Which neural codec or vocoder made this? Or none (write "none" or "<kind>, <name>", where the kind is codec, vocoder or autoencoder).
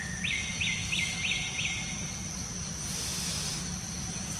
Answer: none